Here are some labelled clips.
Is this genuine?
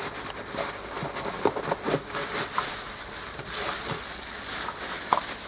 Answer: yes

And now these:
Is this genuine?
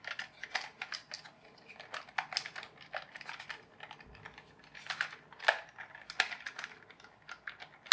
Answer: yes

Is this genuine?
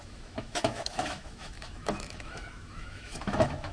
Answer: no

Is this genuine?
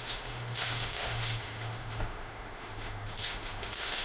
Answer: no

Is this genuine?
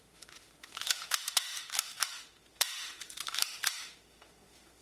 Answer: no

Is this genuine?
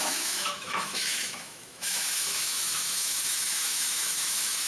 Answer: no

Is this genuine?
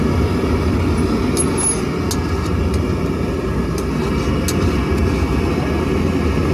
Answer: yes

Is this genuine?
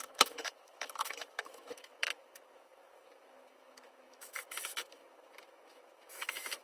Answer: no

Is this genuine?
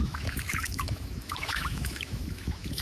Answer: no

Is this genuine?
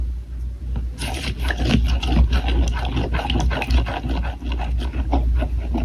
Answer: yes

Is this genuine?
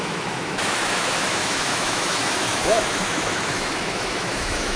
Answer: no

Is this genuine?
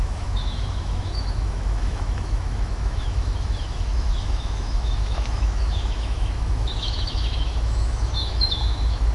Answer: no